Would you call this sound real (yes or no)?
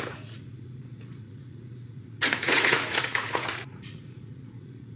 no